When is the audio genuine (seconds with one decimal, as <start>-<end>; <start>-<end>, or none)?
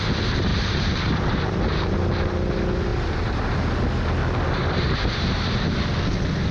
0.0-0.5; 2.0-4.2; 5.7-6.5